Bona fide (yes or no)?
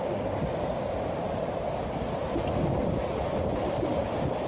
yes